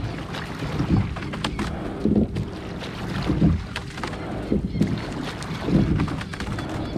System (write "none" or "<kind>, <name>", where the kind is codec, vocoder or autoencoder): none